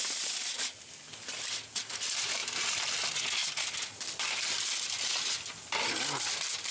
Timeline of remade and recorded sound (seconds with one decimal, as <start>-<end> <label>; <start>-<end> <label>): 0.0-6.7 recorded